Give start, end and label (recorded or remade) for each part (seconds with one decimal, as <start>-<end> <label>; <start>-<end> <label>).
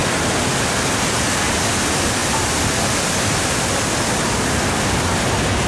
0.0-5.7 recorded